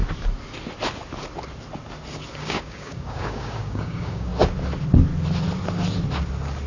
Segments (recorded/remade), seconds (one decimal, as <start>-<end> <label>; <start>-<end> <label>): 0.0-2.3 recorded; 2.3-4.3 remade; 4.3-6.7 recorded